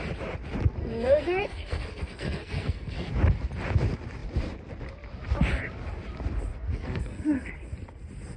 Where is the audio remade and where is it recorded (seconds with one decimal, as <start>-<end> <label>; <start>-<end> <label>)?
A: 0.0-0.8 recorded; 0.8-3.1 remade; 3.1-6.5 recorded; 6.5-7.5 remade; 7.5-8.4 recorded